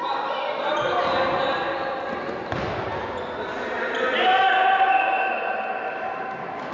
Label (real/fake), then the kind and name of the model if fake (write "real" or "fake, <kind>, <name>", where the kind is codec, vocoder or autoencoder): real